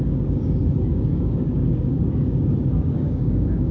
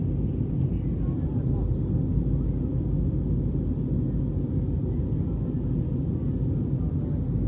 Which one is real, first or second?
second